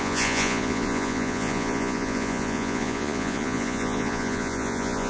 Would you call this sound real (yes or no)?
no